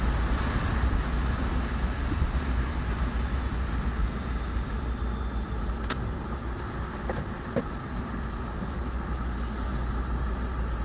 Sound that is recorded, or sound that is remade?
recorded